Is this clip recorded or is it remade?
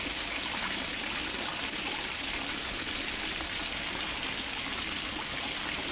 recorded